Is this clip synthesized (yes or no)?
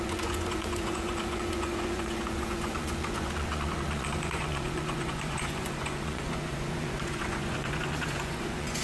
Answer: yes